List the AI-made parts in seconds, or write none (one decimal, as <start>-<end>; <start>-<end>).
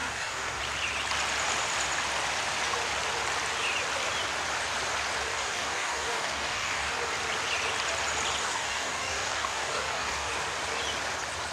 0.0-0.6; 5.3-6.9; 8.4-10.3